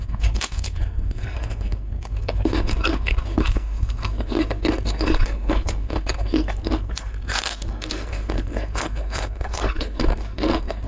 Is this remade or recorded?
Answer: remade